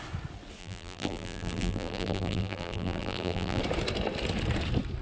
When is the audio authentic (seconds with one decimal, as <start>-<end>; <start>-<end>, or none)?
0.0-0.6; 3.6-5.0